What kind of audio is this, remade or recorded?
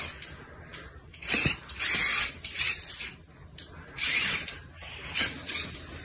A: recorded